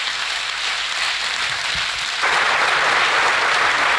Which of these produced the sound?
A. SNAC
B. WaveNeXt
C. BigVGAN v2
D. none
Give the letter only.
D